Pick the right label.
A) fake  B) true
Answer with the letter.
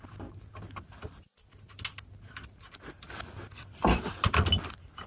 B